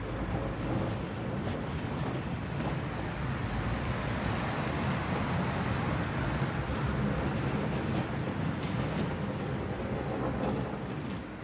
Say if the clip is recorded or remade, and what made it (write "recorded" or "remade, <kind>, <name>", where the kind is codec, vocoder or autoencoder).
recorded